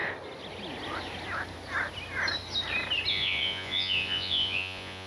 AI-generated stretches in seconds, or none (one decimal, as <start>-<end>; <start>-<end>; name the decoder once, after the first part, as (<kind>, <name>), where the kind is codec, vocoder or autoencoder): 3.1-5.1 (vocoder, Vocos)